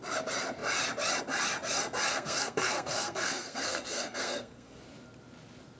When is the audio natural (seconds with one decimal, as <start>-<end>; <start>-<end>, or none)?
0.0-2.1; 4.8-5.8